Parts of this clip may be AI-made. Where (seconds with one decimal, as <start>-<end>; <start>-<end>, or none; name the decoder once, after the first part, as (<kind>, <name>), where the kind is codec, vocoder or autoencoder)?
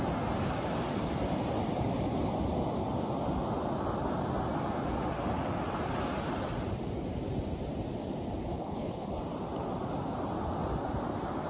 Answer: 8.4-9.2 (codec, HILCodec)